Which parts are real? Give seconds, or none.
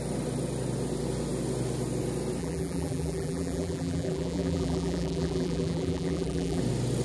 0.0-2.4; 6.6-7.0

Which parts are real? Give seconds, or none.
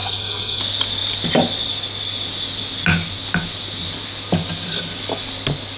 0.6-5.8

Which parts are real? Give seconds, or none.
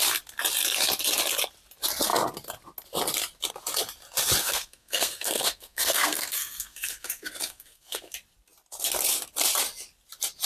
0.0-4.4; 8.1-10.5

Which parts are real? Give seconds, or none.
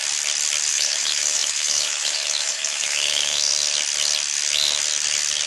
0.0-0.7; 3.5-5.5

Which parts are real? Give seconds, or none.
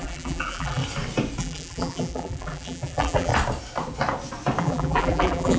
0.8-1.4; 3.3-4.6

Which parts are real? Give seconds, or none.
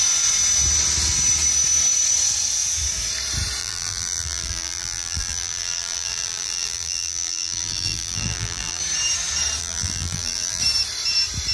0.0-3.6; 8.8-9.6; 10.6-11.5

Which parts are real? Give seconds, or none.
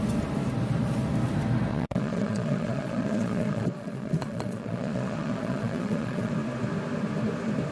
0.0-1.7; 6.3-7.7